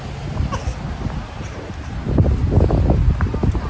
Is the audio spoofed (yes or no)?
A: no